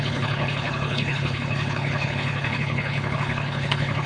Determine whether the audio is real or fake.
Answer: fake